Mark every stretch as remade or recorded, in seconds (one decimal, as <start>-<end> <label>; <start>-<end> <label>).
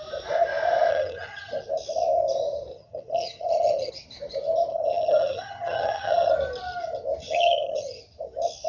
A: 0.0-0.9 recorded; 0.9-1.5 remade; 1.5-2.7 recorded; 2.7-3.9 remade; 3.9-4.7 recorded; 4.7-6.3 remade; 6.3-7.2 recorded; 7.2-8.0 remade; 8.0-8.7 recorded